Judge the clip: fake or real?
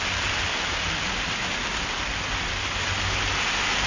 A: real